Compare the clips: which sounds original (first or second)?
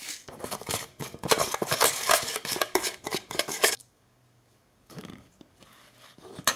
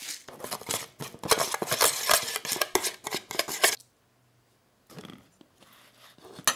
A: second